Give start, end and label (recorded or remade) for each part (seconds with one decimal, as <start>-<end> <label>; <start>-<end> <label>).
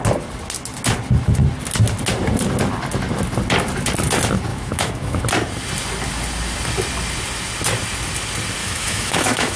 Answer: 0.0-4.5 recorded; 4.5-5.2 remade; 5.2-8.6 recorded; 8.6-9.6 remade